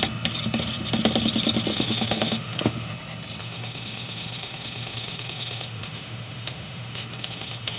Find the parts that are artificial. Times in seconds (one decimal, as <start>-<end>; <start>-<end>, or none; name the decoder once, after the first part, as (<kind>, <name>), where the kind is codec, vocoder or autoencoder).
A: 1.7-2.9 (autoencoder, DAC-VAE); 3.4-7.8